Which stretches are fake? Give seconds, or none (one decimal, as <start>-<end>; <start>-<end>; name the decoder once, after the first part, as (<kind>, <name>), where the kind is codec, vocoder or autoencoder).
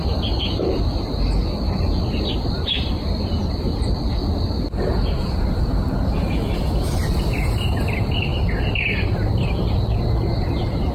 none